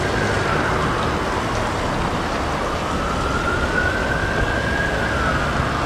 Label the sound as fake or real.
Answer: real